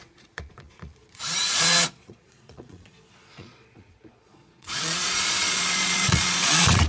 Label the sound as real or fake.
fake